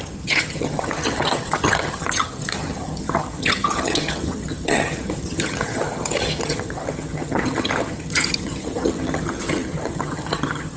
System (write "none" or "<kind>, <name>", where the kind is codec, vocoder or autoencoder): vocoder, HiFi-GAN